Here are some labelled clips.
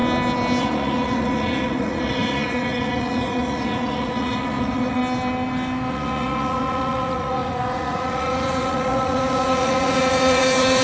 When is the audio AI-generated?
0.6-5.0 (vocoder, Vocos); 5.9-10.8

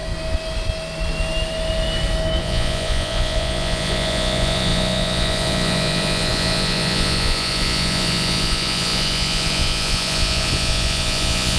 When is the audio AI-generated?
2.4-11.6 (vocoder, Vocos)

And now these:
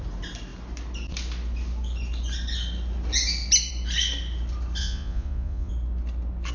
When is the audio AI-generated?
4.8-5.7 (vocoder, Vocos)

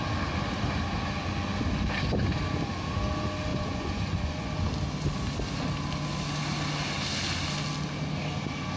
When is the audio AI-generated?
3.5-4.5 (vocoder, Vocos)